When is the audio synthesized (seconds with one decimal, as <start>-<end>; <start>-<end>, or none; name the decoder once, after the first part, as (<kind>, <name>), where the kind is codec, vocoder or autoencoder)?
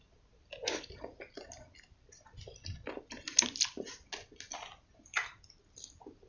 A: none